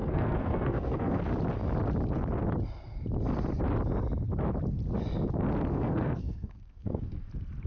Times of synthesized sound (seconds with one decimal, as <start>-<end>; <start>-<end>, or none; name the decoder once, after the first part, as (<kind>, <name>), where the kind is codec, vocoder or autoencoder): 0.0-1.2 (codec, SNAC); 5.7-7.3